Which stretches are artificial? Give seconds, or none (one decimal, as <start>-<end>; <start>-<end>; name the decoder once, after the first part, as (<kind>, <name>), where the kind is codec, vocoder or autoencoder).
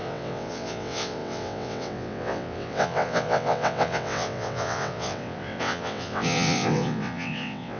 0.0-7.8 (vocoder, WaveNeXt)